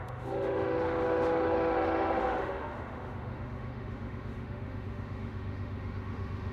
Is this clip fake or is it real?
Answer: fake